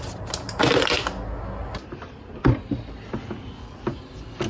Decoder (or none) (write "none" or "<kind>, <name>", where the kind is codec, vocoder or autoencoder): none